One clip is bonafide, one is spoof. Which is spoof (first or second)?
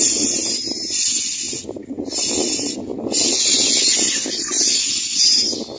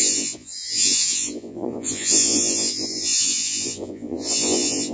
second